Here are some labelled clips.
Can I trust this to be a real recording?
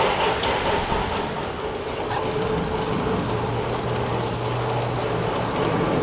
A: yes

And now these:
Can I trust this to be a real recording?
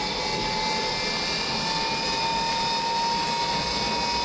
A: yes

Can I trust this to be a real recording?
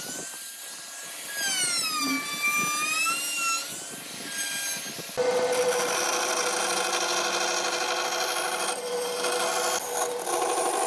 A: yes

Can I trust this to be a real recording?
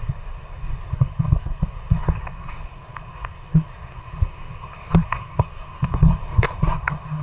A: no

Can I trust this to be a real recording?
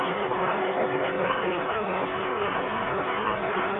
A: no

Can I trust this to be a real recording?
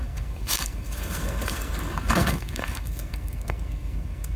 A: no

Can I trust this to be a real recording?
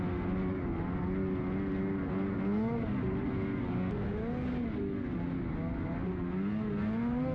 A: yes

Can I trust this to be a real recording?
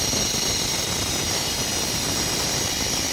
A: yes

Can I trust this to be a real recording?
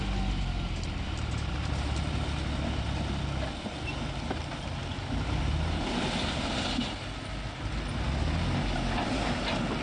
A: yes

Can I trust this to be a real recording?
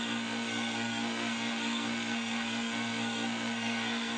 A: no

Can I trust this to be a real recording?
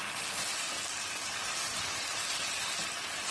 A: yes